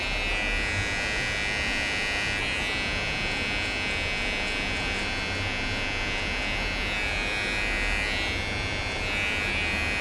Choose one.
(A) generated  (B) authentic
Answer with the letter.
B